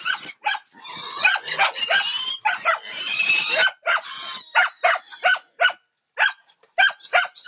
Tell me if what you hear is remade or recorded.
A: recorded